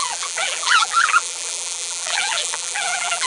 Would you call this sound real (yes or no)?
no